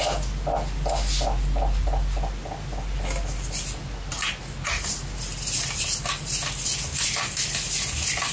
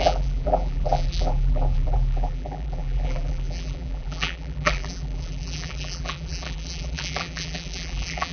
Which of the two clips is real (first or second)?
first